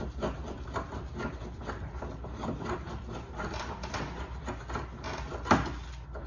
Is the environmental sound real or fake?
real